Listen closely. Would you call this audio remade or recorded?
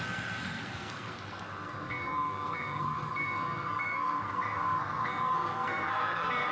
remade